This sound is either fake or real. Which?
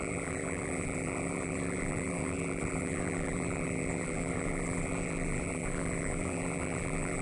fake